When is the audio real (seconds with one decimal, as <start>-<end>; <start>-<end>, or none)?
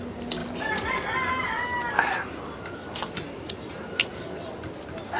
0.0-5.2